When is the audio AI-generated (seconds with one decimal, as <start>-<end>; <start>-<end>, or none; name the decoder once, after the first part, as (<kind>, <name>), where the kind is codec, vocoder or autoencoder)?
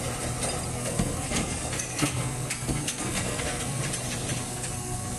0.7-3.8 (codec, SNAC); 4.4-5.2